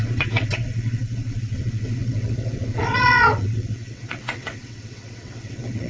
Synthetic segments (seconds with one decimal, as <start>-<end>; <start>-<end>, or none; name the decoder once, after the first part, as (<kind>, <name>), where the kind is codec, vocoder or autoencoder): 0.0-5.9 (vocoder, WaveNeXt)